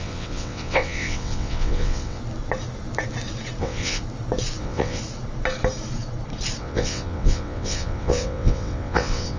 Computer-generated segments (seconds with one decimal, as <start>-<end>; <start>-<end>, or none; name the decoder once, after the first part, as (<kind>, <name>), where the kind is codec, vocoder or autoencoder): 0.0-2.2 (vocoder, WaveNeXt); 3.6-4.0; 4.6-5.0; 6.6-9.4